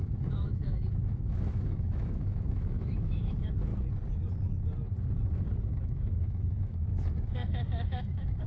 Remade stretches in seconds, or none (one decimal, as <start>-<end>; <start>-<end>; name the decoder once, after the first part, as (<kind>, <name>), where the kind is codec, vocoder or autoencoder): 0.0-3.7 (autoencoder, DAC-VAE); 5.6-8.5